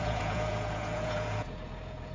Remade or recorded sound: remade